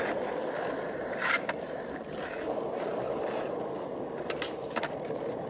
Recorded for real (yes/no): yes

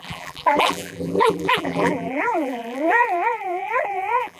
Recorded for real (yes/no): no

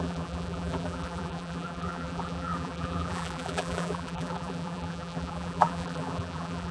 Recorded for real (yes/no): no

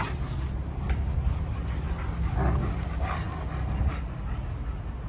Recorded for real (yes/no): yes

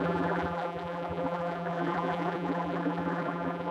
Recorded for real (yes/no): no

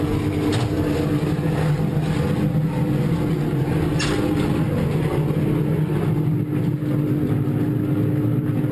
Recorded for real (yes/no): yes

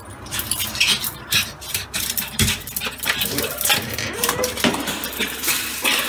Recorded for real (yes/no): no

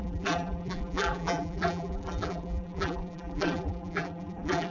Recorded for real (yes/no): no